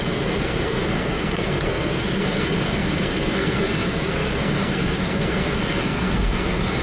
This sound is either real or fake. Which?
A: fake